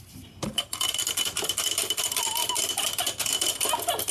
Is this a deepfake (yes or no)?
no